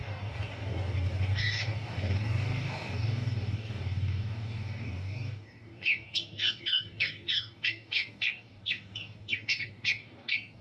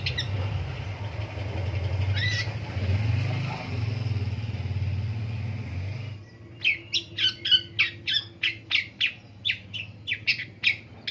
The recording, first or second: second